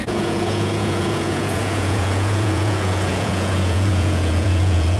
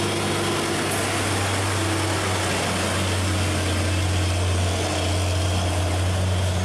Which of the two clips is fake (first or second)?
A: first